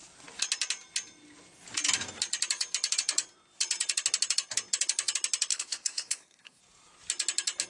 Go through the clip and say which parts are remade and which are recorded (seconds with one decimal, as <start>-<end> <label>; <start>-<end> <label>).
0.0-5.5 recorded; 5.5-6.6 remade; 6.6-7.7 recorded